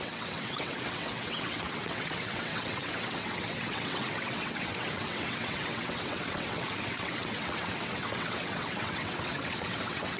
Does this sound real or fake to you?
fake